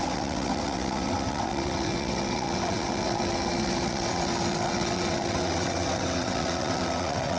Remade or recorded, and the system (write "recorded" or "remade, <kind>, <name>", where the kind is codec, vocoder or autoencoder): remade, vocoder, WaveNeXt